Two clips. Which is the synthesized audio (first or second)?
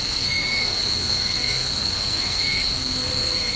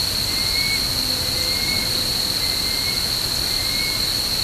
first